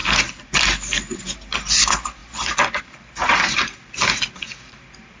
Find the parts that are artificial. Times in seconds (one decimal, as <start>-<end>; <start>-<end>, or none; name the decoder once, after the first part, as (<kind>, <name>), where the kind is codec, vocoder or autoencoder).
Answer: none